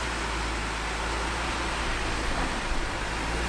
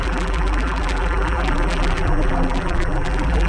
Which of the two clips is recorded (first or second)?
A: first